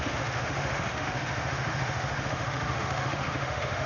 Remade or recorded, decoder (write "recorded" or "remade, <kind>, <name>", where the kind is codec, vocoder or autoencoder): remade, autoencoder, DAC-VAE